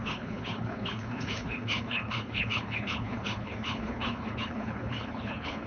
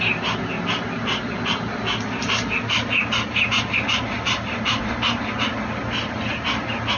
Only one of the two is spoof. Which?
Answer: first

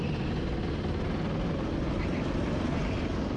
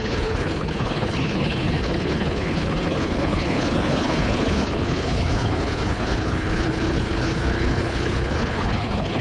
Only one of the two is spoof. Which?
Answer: second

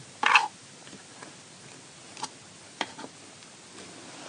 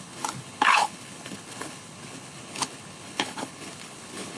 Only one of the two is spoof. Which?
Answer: second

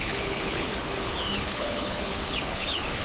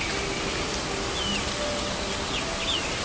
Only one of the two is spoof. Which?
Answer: first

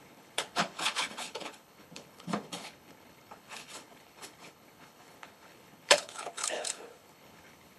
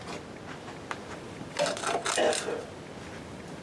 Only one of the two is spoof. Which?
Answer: first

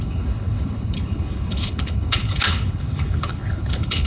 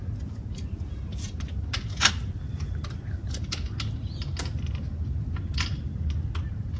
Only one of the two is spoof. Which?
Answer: first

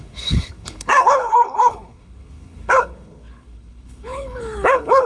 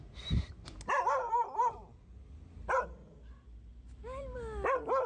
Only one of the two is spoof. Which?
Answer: first